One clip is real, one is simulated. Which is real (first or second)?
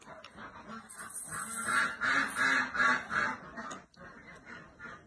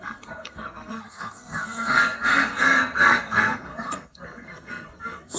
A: first